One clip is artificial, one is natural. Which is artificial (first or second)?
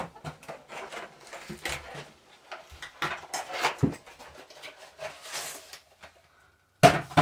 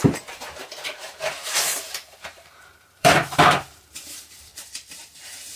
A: second